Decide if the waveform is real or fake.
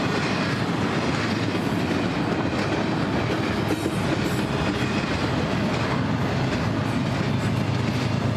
real